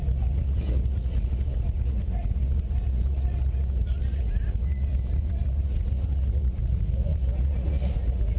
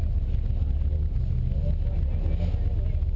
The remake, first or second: first